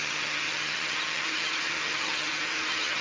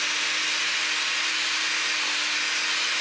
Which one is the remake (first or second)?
first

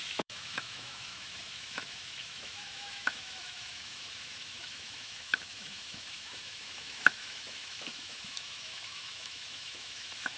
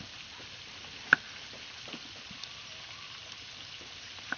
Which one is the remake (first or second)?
first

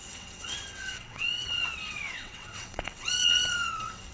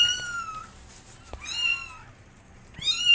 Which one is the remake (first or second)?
first